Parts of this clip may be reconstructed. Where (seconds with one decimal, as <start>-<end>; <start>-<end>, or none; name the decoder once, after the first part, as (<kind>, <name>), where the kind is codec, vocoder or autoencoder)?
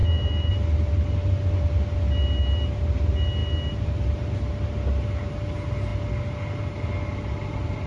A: 0.0-0.5 (autoencoder, DAC-VAE)